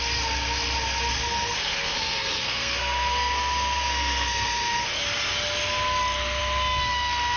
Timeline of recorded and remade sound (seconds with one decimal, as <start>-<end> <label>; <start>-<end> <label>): 0.0-1.1 recorded; 1.1-5.0 remade; 5.0-7.4 recorded